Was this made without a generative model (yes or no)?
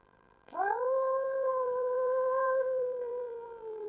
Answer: no